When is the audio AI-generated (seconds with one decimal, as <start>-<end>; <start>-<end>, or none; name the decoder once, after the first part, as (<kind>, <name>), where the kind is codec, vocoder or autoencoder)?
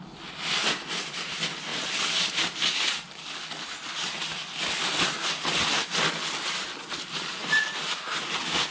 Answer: none